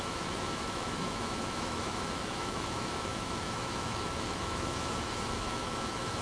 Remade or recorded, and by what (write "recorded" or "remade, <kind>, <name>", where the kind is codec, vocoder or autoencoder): remade, autoencoder, DAC-VAE